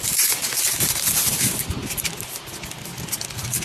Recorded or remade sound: recorded